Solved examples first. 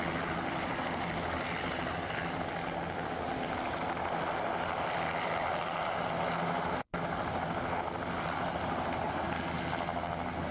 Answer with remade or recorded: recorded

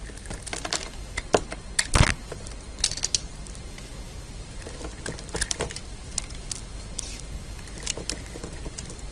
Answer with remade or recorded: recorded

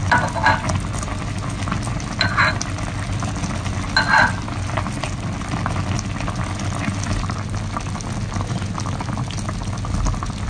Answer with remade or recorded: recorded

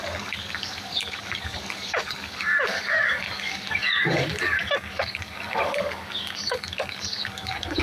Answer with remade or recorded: remade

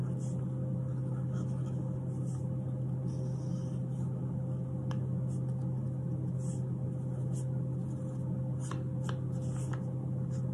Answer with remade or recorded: recorded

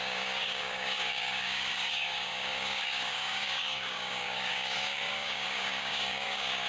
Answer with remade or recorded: remade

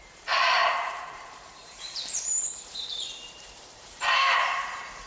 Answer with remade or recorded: remade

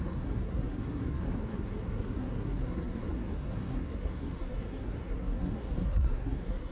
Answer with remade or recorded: remade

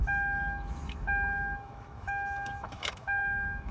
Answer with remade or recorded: remade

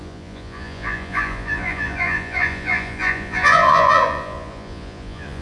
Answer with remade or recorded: remade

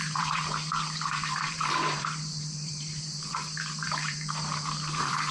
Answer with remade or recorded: remade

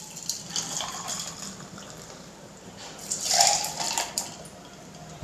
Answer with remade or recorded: remade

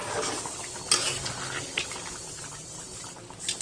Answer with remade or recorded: recorded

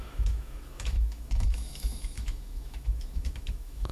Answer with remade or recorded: remade